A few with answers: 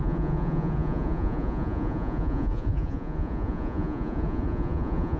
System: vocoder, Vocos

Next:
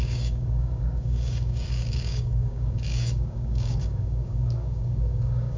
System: codec, DAC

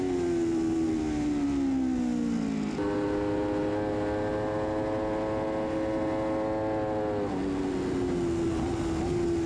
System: none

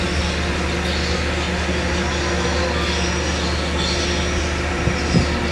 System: none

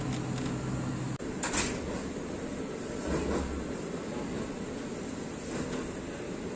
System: none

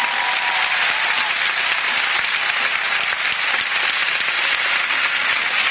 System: none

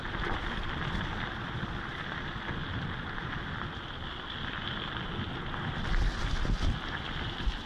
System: none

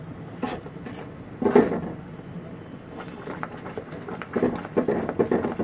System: none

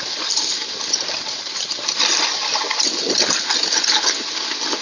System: none